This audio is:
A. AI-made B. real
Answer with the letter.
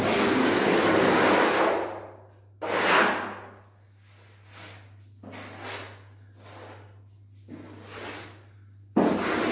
B